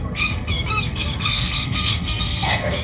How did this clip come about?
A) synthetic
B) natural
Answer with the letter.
A